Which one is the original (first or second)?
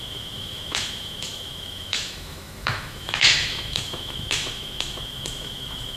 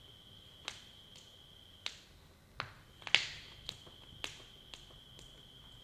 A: second